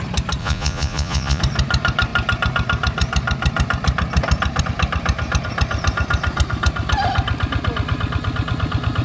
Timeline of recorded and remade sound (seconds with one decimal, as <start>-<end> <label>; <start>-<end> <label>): 0.0-0.4 recorded; 0.4-1.4 remade; 1.4-9.0 recorded